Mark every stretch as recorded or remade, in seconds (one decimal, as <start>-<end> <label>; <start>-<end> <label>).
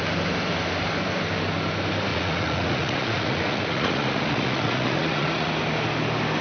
0.0-2.1 recorded; 2.1-5.5 remade; 5.5-6.4 recorded